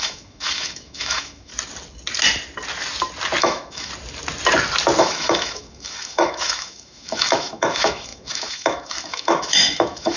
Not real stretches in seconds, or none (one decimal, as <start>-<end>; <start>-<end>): 0.0-1.5; 3.4-3.9; 5.0-10.2